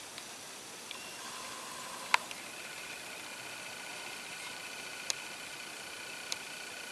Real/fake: real